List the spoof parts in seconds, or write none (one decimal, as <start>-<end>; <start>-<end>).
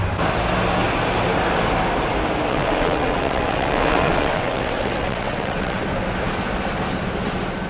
2.5-5.8